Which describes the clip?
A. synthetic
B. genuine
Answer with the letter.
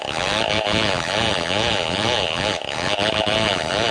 A